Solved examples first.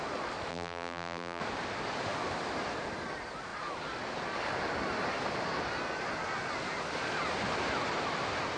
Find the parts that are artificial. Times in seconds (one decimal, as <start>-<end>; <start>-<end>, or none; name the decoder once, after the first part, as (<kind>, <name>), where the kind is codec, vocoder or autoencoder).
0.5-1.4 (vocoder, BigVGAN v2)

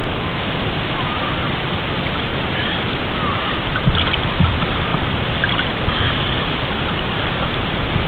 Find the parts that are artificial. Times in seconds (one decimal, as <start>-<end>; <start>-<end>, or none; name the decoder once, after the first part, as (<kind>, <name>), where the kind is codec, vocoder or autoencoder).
1.3-2.3 (vocoder, BigVGAN v2); 3.1-8.1

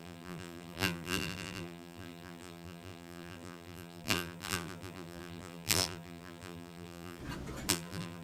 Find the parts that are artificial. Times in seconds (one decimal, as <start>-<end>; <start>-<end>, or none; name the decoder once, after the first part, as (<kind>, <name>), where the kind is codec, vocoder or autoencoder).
0.0-7.2 (vocoder, BigVGAN v2); 7.7-8.2

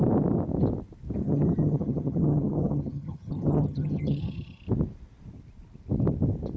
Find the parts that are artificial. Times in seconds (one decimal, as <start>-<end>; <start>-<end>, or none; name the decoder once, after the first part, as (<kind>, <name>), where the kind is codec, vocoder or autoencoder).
1.2-4.6 (vocoder, HiFi-GAN)

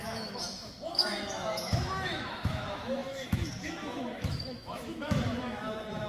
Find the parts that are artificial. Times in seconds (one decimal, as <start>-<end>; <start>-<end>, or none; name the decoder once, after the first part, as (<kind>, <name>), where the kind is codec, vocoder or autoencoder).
0.0-6.1 (autoencoder, DAC-VAE)

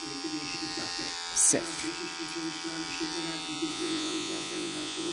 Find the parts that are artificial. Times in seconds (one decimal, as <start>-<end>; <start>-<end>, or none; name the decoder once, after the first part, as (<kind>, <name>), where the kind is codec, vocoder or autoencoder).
3.7-5.1 (vocoder, Vocos)

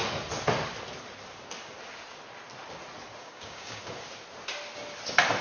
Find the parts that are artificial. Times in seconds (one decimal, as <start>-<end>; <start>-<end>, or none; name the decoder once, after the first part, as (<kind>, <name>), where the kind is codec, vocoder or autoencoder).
3.2-3.8 (codec, DAC)

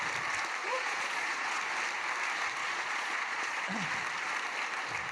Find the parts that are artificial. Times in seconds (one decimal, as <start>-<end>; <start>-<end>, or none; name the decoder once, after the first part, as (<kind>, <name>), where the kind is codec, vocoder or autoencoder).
0.6-1.6 (vocoder, Vocos); 2.6-3.9